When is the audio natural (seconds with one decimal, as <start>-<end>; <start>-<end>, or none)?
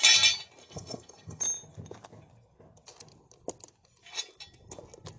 0.0-0.6; 1.4-5.2